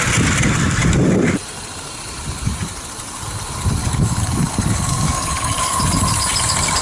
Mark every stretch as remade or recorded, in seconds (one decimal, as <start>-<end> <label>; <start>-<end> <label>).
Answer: 0.0-3.8 recorded; 3.8-5.8 remade; 5.8-6.8 recorded